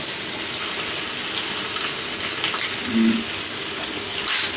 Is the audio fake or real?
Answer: real